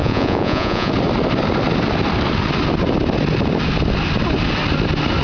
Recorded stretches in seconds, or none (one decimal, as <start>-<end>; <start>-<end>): 0.9-5.2